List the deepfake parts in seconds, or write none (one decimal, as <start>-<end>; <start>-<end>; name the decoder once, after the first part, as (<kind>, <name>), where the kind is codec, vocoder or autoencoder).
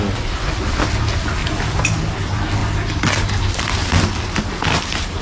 1.4-2.0 (vocoder, BigVGAN v2)